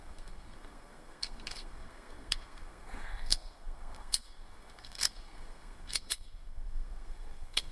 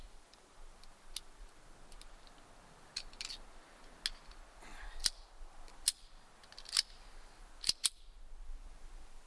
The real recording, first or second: second